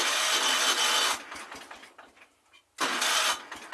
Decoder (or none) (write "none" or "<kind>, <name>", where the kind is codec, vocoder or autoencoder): none